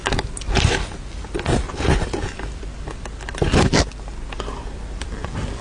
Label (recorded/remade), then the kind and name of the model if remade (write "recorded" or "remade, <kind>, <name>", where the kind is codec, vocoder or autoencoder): recorded